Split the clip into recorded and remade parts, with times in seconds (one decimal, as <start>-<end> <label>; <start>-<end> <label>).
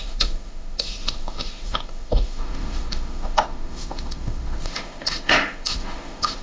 0.0-6.4 remade